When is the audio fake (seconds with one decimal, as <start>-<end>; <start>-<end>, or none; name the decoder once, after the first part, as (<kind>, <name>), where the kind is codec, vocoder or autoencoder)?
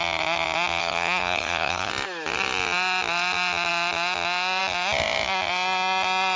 0.8-1.9 (codec, SNAC)